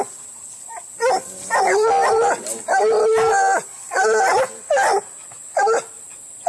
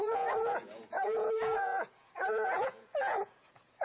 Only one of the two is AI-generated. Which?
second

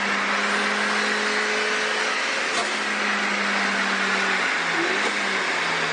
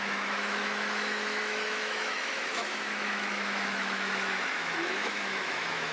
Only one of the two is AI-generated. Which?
second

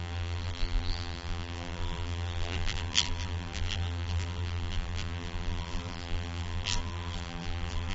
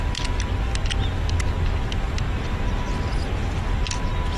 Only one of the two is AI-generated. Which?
first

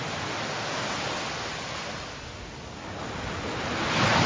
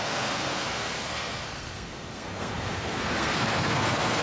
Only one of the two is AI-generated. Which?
second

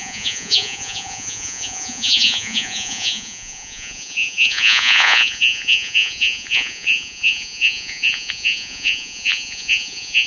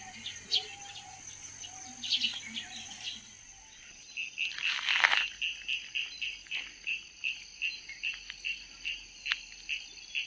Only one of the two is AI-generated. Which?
first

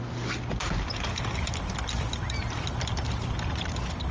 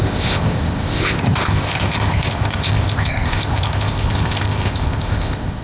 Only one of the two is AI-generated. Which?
second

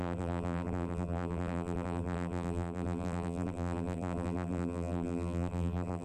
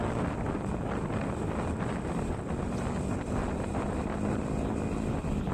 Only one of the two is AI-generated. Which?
first